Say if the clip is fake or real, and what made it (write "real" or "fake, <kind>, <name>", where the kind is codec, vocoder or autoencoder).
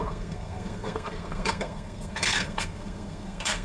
fake, codec, SNAC